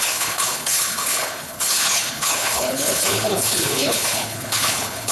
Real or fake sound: fake